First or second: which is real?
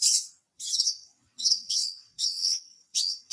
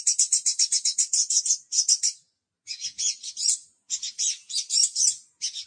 second